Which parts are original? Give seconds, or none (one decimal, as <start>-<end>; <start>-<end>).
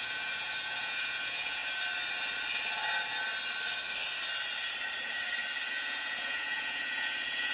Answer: 1.6-5.7